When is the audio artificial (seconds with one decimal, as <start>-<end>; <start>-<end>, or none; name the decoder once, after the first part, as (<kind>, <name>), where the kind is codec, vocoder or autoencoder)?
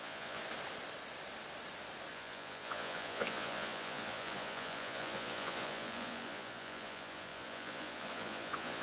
0.0-0.4 (vocoder, Vocos); 2.1-8.8